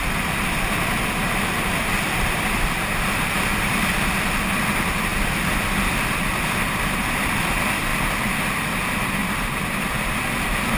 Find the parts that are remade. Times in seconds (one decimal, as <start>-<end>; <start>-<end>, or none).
0.0-5.1; 6.7-7.9; 8.6-9.2; 9.9-10.8